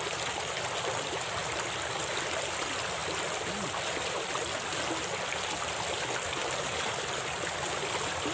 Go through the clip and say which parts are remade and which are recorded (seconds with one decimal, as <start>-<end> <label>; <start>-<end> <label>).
0.0-8.3 recorded